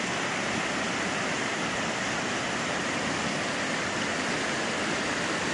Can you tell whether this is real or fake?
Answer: real